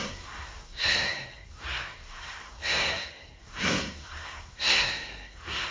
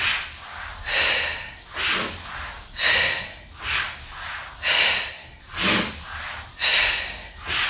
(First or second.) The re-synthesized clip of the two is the first